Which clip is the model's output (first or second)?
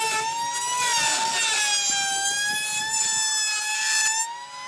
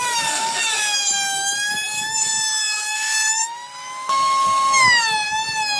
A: second